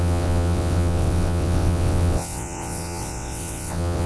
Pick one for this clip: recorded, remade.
remade